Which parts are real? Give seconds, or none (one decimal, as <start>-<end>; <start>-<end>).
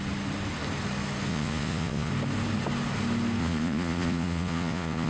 0.0-1.3; 2.1-3.4